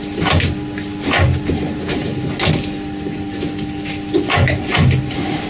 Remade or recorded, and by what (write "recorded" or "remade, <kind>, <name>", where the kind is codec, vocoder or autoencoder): recorded